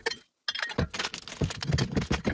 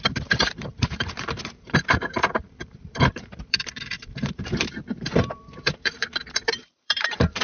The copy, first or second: second